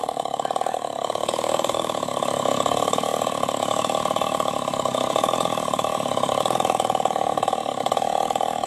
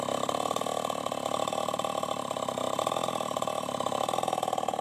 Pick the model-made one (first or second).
first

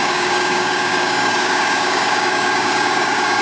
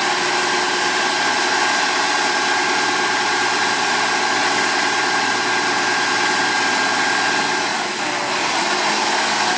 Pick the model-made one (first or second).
first